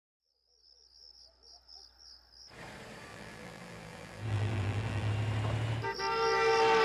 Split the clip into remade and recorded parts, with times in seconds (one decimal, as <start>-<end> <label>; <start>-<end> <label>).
0.0-3.1 recorded; 3.1-5.1 remade; 5.1-6.8 recorded